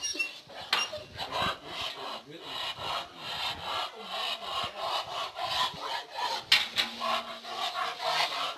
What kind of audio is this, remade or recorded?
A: recorded